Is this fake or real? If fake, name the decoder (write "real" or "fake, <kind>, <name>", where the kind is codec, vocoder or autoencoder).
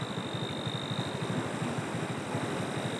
real